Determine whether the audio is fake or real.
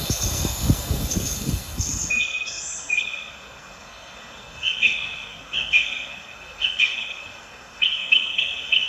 fake